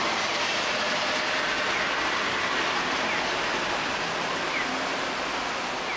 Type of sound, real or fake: real